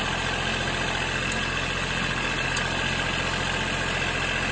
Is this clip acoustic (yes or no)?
yes